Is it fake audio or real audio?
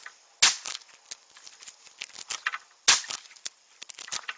real